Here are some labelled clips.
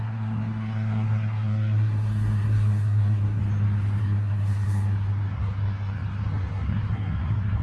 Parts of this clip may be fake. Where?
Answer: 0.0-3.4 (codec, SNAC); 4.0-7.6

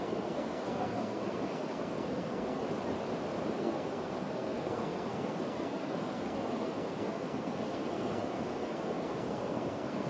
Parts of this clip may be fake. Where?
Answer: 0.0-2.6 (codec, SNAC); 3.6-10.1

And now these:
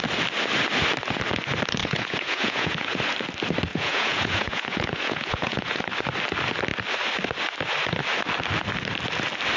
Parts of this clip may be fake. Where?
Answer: 1.8-3.0 (vocoder, Vocos); 3.7-5.8